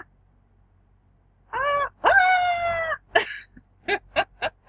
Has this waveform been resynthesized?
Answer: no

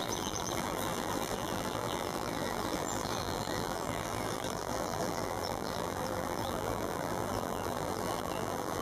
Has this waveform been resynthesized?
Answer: yes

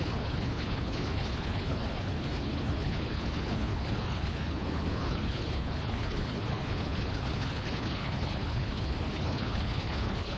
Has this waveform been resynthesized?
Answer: yes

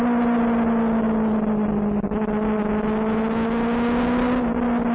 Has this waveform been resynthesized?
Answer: no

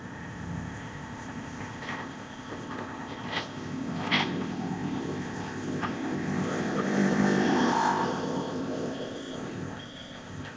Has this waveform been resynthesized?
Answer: yes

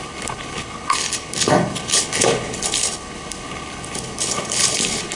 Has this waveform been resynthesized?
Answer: yes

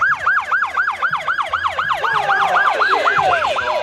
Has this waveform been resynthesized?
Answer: no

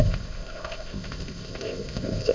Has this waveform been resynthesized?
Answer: yes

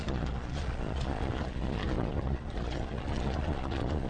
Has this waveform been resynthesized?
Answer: yes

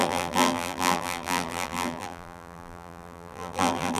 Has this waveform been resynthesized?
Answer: yes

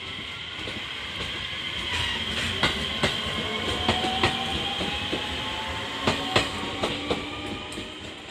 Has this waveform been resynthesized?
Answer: no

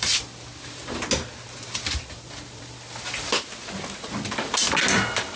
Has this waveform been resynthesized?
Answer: no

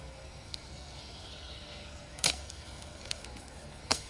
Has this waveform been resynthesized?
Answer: yes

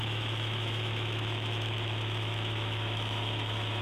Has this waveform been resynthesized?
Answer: yes